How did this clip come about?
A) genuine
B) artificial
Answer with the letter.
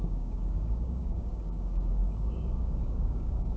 B